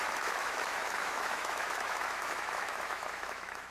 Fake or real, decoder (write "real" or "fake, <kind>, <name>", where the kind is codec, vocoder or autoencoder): fake, autoencoder, DAC-VAE